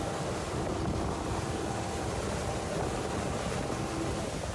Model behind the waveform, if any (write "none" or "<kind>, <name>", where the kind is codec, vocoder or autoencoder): none